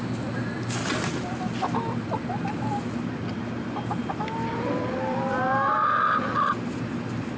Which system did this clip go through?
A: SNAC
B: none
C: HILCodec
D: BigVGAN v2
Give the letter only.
B